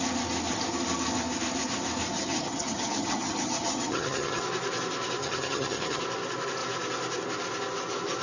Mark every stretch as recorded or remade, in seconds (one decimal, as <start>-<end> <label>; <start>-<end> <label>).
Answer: 0.0-2.1 recorded; 2.1-4.4 remade; 4.4-5.2 recorded; 5.2-6.0 remade; 6.0-8.2 recorded